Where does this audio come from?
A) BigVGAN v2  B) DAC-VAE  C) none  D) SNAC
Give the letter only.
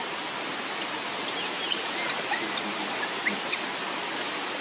C